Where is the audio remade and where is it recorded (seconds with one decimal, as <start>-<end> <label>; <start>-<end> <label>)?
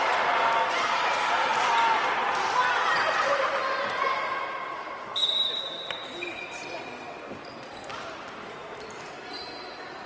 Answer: 0.0-10.1 recorded